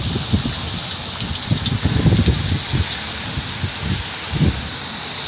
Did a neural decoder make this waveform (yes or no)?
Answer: no